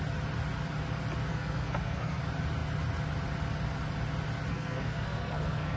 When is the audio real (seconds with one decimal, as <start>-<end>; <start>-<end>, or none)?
0.0-1.3; 2.2-4.5